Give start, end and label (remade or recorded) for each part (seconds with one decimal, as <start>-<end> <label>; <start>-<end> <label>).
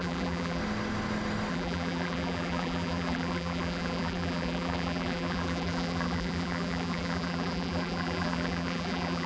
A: 0.0-0.6 remade; 0.6-1.5 recorded; 1.5-9.3 remade